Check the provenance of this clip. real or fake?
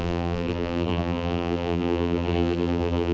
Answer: fake